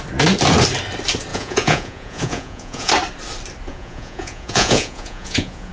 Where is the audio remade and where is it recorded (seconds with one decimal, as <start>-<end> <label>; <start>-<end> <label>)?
0.0-1.3 recorded; 1.3-2.9 remade; 2.9-3.7 recorded; 3.7-5.7 remade